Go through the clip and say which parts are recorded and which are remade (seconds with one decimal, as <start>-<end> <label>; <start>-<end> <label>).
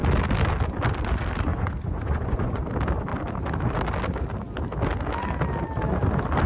0.0-1.5 recorded; 1.5-2.6 remade; 2.6-6.5 recorded